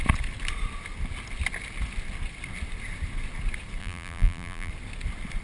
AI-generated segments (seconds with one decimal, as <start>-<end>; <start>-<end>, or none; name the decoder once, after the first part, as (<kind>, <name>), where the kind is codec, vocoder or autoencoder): 3.8-4.7 (vocoder, BigVGAN v2)

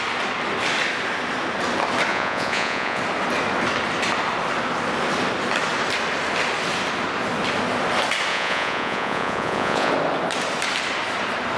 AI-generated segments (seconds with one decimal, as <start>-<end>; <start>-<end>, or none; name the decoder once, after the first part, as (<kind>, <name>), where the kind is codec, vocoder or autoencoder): 2.1-3.0 (vocoder, Vocos); 8.3-9.9